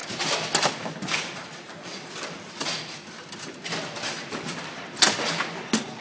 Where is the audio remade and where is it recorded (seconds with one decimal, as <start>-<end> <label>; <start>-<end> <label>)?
0.0-6.0 recorded